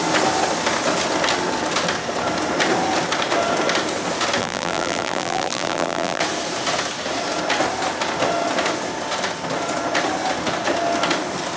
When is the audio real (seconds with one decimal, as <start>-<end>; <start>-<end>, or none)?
0.0-4.4; 6.2-11.6